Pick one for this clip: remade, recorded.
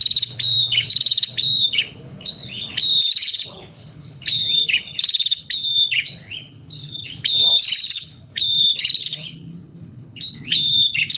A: remade